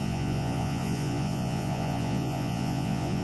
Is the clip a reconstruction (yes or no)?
yes